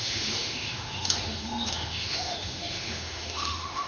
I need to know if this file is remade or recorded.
remade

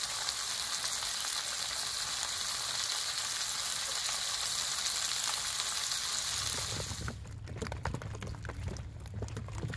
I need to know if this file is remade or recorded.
recorded